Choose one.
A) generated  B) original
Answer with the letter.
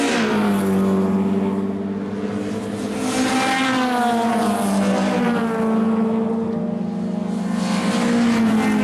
B